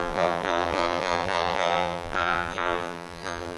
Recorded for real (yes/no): no